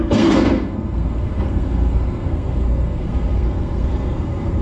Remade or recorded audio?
remade